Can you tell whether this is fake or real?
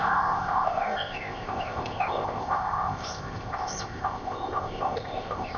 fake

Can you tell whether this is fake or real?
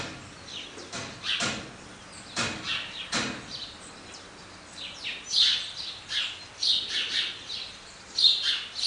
real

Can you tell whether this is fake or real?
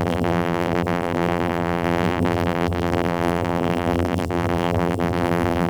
fake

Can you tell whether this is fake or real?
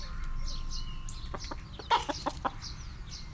real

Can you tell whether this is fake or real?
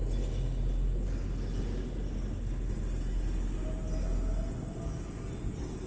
real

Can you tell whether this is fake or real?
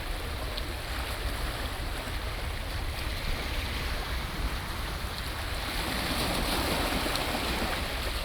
real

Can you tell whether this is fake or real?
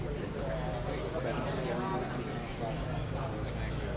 real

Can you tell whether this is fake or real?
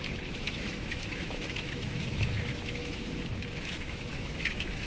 fake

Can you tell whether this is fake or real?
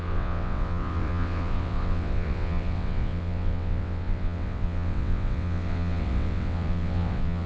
fake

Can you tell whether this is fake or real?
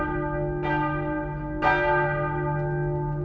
real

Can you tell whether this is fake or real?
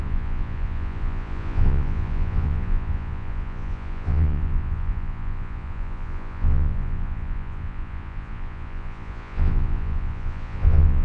fake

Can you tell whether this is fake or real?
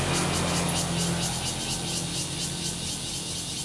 real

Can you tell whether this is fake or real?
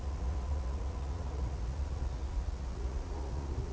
fake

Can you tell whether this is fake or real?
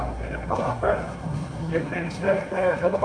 fake